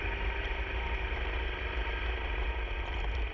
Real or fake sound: real